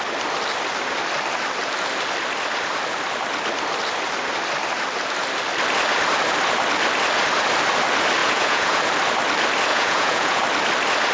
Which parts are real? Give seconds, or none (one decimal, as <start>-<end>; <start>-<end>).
0.0-8.2; 8.8-9.7; 10.4-11.1